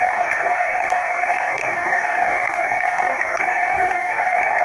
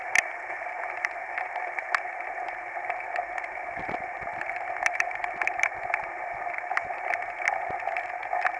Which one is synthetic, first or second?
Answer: first